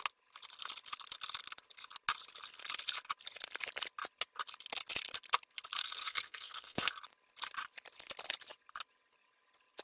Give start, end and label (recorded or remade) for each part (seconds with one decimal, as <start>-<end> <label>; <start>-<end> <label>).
0.0-5.8 recorded; 5.8-7.0 remade; 7.0-9.8 recorded